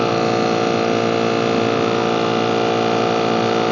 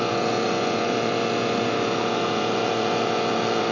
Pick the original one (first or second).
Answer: first